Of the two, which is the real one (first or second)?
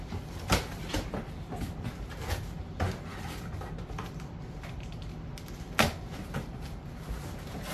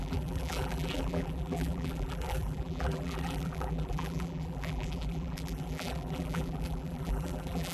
first